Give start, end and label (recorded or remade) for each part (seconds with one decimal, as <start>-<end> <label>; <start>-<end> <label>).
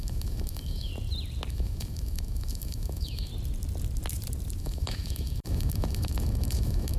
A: 0.0-0.9 remade; 0.9-1.5 recorded; 1.5-3.3 remade; 3.3-4.6 recorded; 4.6-7.0 remade